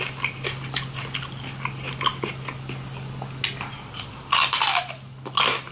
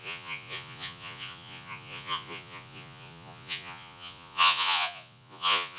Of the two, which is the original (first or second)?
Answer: first